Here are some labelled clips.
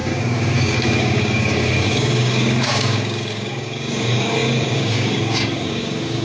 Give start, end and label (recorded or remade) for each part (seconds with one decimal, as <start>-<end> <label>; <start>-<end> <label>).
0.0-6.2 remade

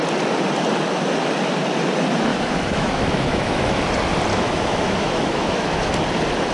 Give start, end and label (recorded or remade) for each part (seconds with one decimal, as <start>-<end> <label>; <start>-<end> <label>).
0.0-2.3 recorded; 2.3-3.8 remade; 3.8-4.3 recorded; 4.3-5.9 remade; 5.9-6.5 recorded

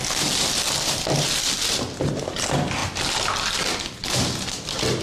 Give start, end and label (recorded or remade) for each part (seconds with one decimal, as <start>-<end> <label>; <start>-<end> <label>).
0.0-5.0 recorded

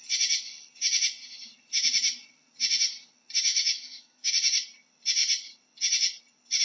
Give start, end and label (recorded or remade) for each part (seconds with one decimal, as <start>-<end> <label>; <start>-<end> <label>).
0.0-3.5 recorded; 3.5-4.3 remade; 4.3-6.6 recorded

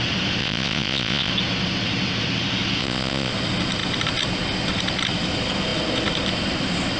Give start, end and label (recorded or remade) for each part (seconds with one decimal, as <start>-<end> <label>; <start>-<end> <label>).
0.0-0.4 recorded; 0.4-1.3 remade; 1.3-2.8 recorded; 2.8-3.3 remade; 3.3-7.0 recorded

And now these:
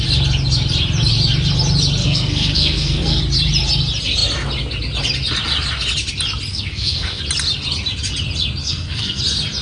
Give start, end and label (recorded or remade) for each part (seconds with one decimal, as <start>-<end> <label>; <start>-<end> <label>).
0.0-2.0 recorded; 2.0-3.2 remade; 3.2-6.5 recorded; 6.5-7.2 remade; 7.2-8.6 recorded; 8.6-9.2 remade; 9.2-9.6 recorded

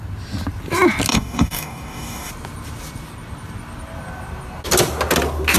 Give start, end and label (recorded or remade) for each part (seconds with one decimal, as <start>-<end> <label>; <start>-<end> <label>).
0.0-1.1 recorded; 1.1-2.3 remade; 2.3-5.6 recorded

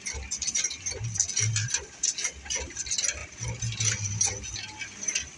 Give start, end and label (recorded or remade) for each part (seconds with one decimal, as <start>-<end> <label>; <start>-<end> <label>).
0.0-5.4 recorded